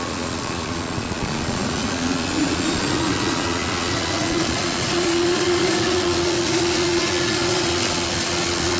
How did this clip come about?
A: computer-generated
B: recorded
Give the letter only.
A